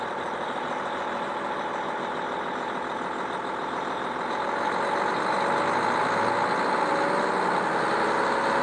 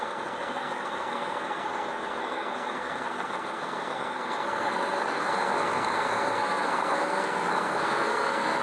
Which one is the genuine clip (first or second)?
first